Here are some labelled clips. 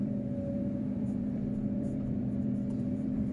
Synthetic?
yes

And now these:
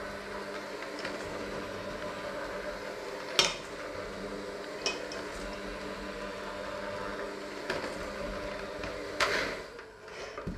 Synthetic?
no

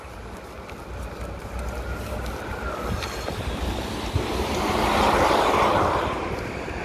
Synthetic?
no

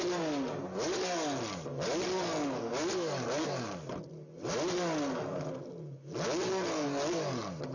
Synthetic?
no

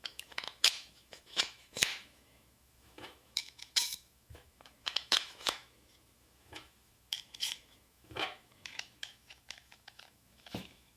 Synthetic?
yes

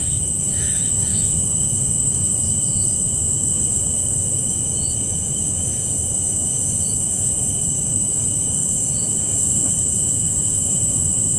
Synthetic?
yes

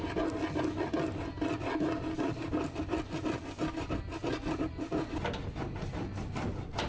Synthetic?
no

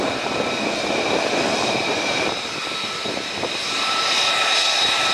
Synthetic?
yes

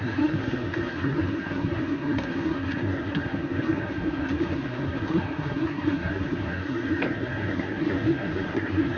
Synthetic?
yes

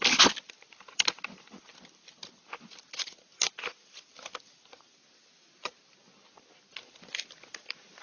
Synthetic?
no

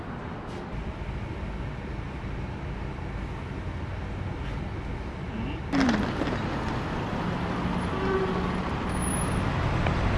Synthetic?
no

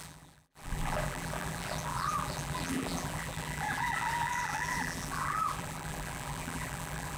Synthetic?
yes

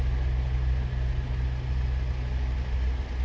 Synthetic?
no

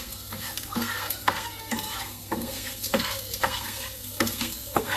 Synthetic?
yes